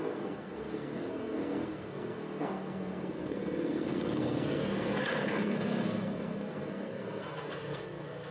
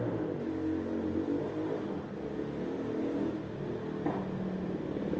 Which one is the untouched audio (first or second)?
second